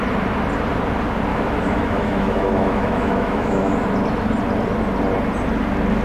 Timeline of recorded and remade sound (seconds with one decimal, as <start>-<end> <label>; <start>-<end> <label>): 0.0-1.3 recorded; 1.3-3.7 remade; 3.7-6.0 recorded